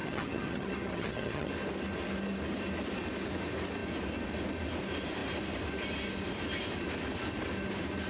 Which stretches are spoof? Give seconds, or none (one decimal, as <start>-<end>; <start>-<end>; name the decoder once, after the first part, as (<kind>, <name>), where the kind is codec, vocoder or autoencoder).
0.0-1.5 (vocoder, HiFi-GAN)